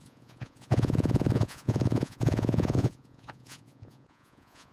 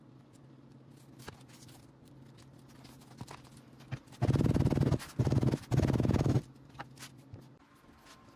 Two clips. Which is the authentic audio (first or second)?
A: second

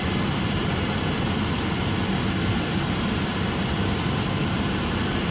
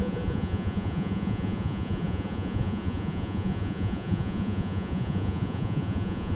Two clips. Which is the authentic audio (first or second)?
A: first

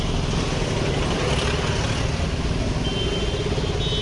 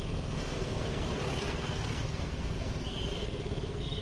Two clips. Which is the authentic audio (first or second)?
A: first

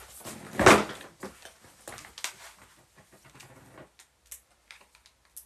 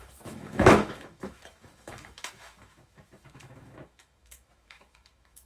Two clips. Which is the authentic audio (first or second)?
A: first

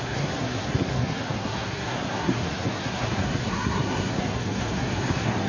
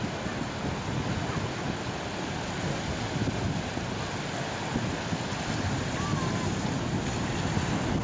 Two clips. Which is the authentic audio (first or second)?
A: second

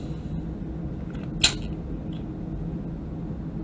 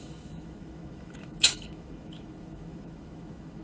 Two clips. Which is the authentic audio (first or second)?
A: first